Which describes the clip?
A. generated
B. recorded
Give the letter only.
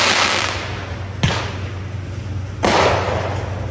B